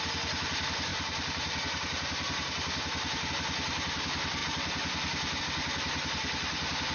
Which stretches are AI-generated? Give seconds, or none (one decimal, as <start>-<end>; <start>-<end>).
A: 0.9-3.3